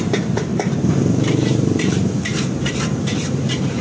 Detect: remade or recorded remade